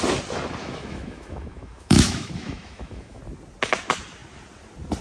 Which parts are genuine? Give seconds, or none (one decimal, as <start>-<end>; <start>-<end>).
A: 0.0-0.6; 3.2-5.0